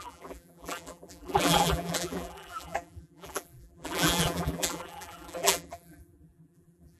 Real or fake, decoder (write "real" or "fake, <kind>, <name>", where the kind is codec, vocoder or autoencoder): fake, vocoder, BigVGAN v2